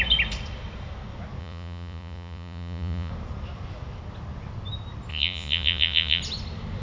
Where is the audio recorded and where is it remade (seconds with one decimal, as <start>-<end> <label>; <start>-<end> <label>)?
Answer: 0.0-1.4 recorded; 1.4-3.1 remade; 3.1-5.1 recorded; 5.1-6.2 remade; 6.2-6.8 recorded